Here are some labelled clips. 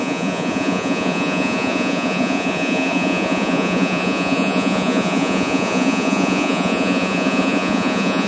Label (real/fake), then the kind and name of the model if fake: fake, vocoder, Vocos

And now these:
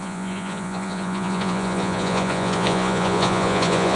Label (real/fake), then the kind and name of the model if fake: fake, vocoder, Vocos